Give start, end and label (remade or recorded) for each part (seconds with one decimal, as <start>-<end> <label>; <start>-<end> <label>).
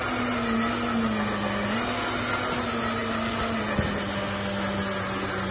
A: 0.0-5.5 recorded